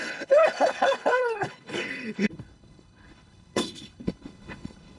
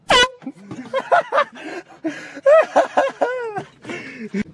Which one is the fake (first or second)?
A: first